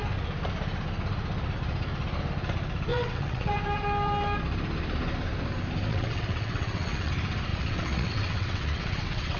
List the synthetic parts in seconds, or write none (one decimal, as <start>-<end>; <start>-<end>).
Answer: 2.9-3.5; 5.9-7.1; 7.5-9.4